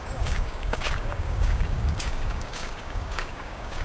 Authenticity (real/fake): fake